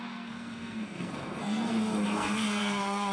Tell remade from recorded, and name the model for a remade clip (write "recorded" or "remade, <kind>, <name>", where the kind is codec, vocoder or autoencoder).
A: remade, codec, SNAC